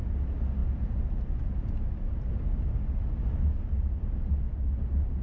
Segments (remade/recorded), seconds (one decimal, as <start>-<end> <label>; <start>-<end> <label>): 0.0-5.2 recorded